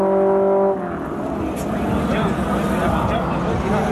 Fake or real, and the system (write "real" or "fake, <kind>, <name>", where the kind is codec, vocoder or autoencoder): real